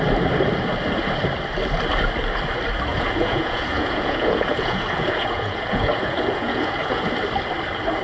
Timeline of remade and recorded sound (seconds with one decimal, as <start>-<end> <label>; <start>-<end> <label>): 0.0-2.9 recorded; 2.9-7.1 remade; 7.1-8.0 recorded